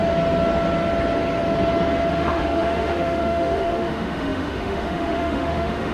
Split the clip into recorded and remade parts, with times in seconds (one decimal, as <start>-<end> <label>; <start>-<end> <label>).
0.0-2.1 recorded; 2.1-5.9 remade